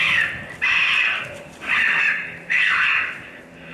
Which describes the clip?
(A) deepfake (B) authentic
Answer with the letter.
A